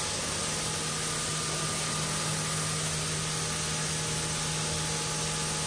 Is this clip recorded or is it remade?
recorded